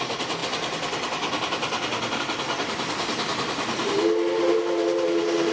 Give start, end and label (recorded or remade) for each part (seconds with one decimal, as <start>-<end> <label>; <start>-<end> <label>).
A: 0.0-5.5 recorded